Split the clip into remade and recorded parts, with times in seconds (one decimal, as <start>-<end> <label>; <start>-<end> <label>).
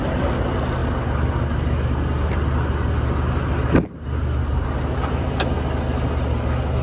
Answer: 0.0-6.8 recorded